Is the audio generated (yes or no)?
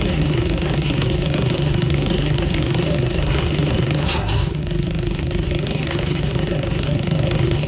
yes